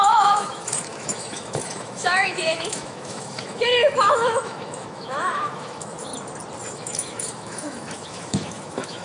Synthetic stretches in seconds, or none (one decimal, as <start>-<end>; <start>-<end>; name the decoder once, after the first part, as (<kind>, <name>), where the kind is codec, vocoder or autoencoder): 0.0-6.1 (autoencoder, DAC-VAE); 6.7-9.0